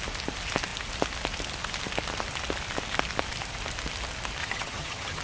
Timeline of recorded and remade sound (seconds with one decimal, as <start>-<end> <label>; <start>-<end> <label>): 0.0-4.4 recorded; 4.4-5.2 remade